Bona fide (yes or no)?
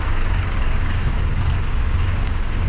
no